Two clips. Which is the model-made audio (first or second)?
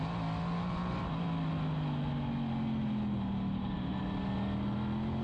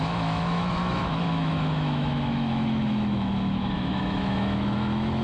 second